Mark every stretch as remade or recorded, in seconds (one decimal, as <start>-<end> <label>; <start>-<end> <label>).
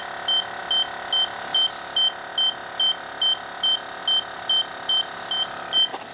0.0-6.1 recorded